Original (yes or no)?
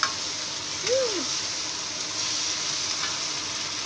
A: yes